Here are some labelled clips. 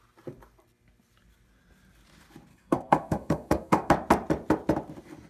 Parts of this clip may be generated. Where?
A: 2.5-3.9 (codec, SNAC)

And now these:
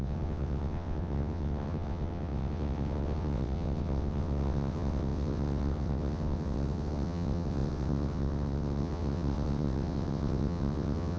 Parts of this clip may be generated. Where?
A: 0.0-11.2 (vocoder, WaveNeXt)

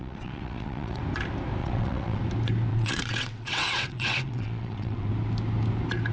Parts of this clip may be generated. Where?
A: 0.0-1.0 (vocoder, WaveNeXt); 1.6-2.2; 2.7-5.1

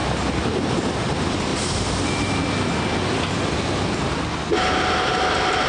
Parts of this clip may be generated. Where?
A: none

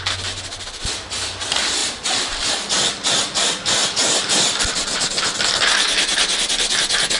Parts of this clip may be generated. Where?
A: 1.8-2.5 (vocoder, BigVGAN v2); 3.8-4.6

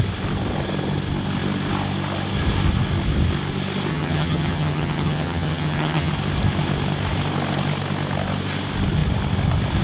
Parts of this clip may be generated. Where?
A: 3.9-6.1 (vocoder, HiFi-GAN)